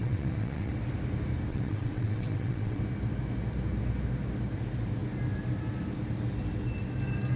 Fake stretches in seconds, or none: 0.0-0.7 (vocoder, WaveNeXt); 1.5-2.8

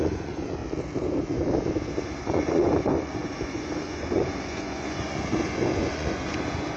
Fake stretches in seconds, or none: 0.0-0.6 (vocoder, Vocos); 2.2-6.8

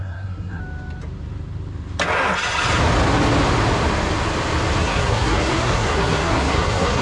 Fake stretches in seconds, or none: 0.0-0.6 (codec, SNAC); 4.8-7.0

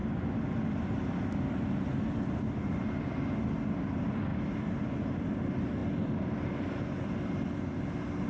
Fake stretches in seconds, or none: none

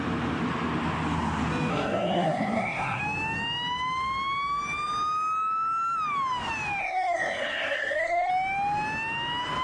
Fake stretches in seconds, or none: 1.7-3.0 (codec, SNAC); 6.8-8.3

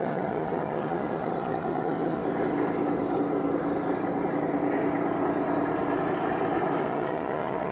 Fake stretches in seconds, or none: 0.0-2.2 (vocoder, Vocos); 6.8-7.7

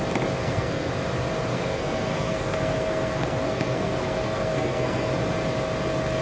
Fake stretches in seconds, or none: 0.4-0.9 (codec, SNAC); 1.5-5.1

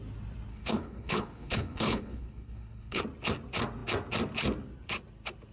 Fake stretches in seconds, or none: 0.5-3.0 (codec, HILCodec)